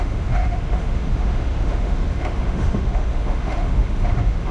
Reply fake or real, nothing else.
fake